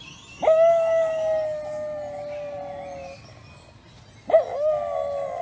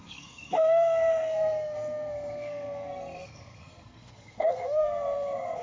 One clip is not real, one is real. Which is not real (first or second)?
second